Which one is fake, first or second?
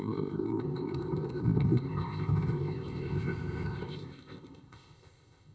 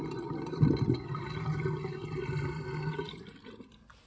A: first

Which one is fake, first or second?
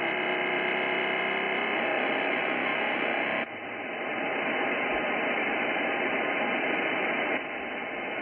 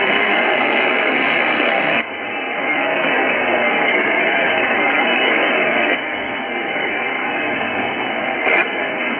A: second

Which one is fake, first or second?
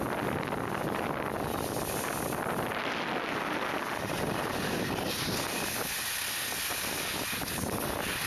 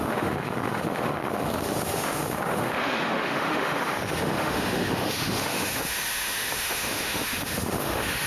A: second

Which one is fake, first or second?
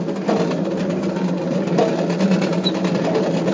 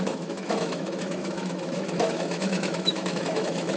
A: second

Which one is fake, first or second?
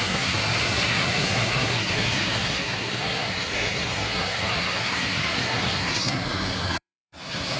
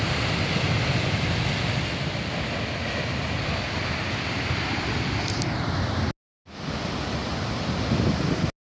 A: first